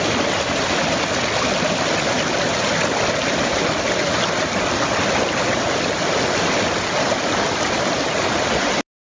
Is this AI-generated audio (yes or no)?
no